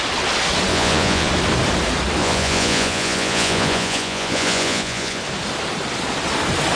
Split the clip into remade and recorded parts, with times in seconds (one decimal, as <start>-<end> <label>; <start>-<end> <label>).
0.0-0.7 recorded; 0.7-1.3 remade; 1.3-2.2 recorded; 2.2-5.2 remade; 5.2-6.8 recorded